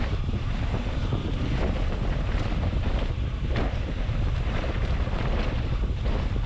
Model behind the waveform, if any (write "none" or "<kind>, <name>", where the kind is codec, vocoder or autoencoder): vocoder, BigVGAN v2